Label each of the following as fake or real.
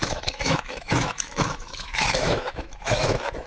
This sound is fake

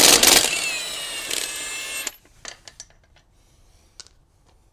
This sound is real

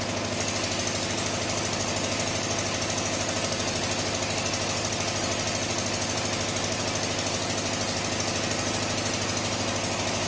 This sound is real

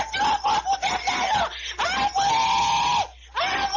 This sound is real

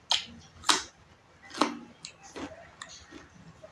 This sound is real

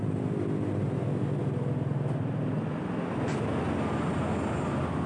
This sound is real